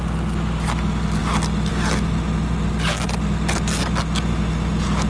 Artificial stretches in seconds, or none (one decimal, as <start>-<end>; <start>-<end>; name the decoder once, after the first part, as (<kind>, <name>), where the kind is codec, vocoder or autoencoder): none